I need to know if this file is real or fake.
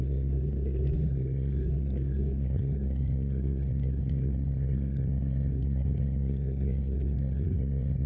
fake